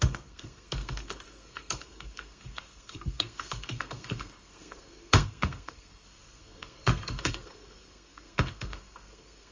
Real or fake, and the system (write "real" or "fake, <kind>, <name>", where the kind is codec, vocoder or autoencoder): fake, codec, SNAC